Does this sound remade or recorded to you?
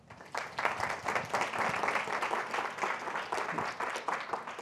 recorded